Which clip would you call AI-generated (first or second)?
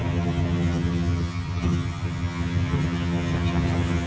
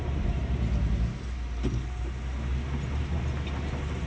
first